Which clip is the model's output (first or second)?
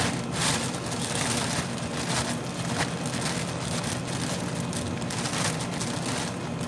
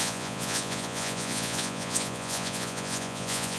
second